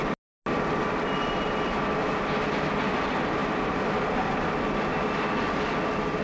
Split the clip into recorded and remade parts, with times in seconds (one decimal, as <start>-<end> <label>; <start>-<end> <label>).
0.0-3.4 recorded; 3.4-4.6 remade; 4.6-6.2 recorded